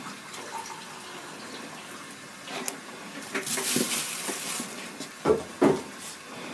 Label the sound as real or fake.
real